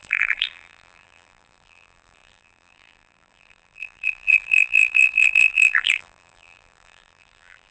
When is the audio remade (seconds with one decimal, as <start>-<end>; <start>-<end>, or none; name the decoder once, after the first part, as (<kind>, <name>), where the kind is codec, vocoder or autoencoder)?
0.0-7.7 (vocoder, BigVGAN v2)